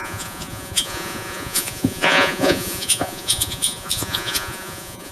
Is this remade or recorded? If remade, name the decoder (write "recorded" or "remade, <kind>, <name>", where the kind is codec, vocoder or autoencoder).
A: remade, vocoder, Vocos